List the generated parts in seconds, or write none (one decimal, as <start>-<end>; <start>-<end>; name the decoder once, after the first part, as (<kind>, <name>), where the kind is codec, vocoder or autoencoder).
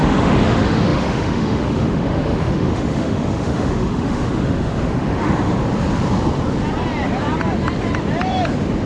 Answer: 0.0-5.6 (autoencoder, DAC-VAE)